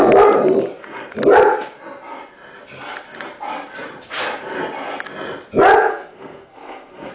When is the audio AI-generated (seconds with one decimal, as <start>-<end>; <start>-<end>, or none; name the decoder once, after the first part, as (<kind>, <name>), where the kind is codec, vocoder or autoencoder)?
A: 5.9-7.1 (codec, SNAC)